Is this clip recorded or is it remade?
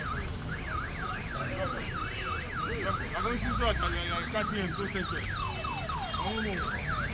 recorded